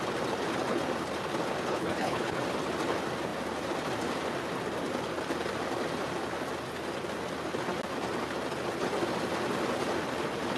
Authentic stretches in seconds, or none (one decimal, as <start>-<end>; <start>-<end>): 0.0-1.7; 2.4-10.6